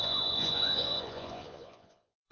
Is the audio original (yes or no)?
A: no